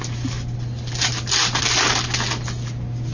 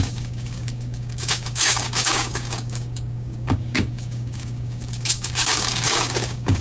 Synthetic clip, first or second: second